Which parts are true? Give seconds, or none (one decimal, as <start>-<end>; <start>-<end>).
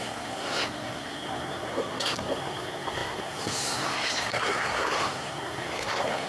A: none